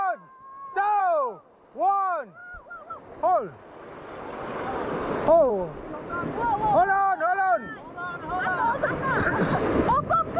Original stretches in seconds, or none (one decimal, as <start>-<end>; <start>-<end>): 0.0-10.4